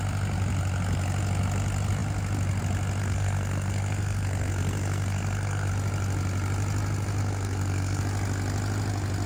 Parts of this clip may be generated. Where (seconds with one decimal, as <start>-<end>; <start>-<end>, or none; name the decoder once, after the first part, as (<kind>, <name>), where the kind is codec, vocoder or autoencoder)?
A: 3.0-5.7 (codec, SNAC); 7.2-8.0

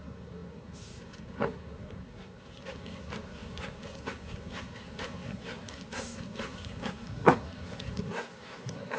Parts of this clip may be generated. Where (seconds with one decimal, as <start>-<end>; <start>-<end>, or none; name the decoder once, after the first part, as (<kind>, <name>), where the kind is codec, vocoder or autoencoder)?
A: 0.0-9.0 (codec, SNAC)

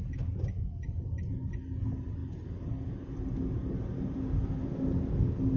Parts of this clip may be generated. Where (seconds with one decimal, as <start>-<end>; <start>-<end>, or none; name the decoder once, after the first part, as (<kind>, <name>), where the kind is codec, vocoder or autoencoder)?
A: none

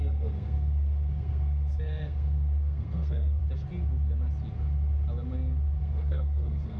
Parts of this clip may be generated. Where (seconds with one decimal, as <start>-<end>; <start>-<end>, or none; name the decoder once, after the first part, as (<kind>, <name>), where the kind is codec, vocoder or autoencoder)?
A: 0.0-3.4 (codec, SNAC); 5.8-6.8

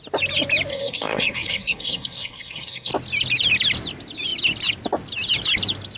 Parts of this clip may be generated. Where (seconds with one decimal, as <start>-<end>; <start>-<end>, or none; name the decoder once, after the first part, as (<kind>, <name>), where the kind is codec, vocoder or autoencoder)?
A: 0.7-2.9 (codec, SNAC)